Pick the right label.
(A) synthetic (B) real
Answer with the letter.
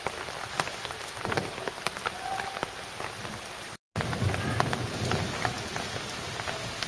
B